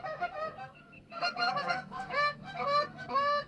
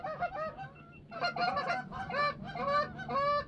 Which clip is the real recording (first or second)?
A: second